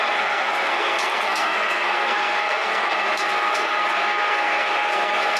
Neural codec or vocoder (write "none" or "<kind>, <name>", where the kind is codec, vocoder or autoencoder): codec, SNAC